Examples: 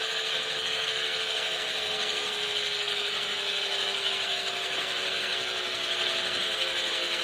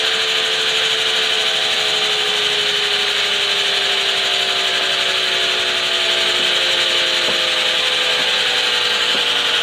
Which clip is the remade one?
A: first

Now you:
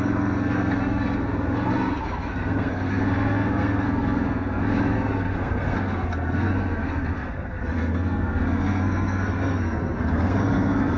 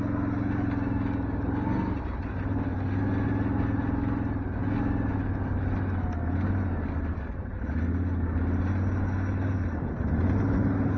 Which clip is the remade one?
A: first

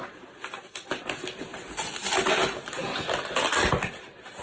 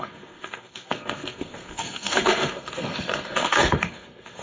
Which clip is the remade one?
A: second